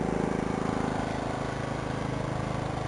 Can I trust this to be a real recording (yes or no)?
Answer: yes